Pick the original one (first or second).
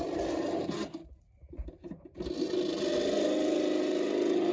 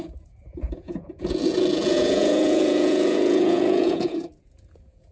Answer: first